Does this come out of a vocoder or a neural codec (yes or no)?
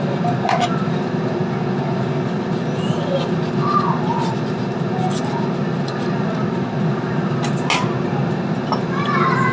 no